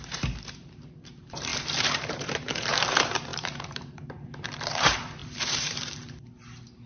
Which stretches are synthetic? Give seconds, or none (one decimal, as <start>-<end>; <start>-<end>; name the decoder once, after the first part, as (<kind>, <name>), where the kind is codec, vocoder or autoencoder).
0.0-6.9 (vocoder, BigVGAN v2)